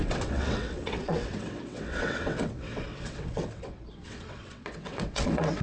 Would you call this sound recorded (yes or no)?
no